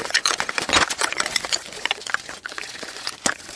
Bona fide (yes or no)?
no